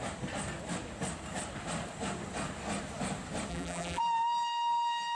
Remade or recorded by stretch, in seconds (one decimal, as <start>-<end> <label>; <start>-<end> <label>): 0.0-3.5 recorded; 3.5-4.0 remade; 4.0-5.1 recorded